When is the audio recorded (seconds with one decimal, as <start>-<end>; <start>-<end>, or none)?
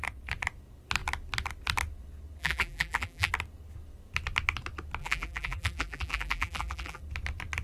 0.0-2.4; 3.3-5.0; 7.0-7.6